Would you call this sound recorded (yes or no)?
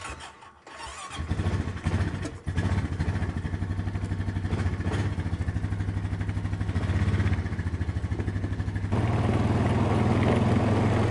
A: yes